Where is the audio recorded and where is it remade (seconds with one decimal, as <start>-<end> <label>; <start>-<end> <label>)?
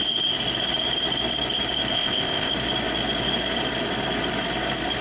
0.0-1.9 recorded; 1.9-2.5 remade; 2.5-5.0 recorded